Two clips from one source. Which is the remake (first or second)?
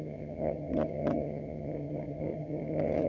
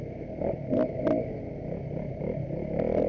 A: first